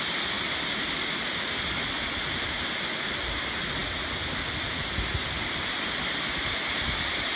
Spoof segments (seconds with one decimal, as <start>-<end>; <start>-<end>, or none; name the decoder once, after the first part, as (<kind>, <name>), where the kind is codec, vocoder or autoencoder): none